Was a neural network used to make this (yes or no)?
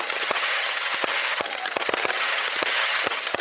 yes